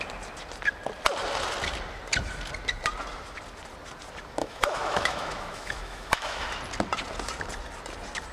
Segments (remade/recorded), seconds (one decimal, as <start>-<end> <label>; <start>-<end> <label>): 0.0-4.4 recorded; 4.4-6.6 remade; 6.6-8.3 recorded